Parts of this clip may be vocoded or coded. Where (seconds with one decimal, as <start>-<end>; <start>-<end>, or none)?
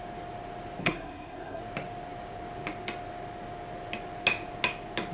0.8-1.6